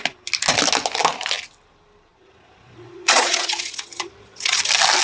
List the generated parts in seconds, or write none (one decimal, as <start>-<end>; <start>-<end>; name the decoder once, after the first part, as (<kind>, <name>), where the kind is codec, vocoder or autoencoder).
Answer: 2.1-4.6 (vocoder, Vocos)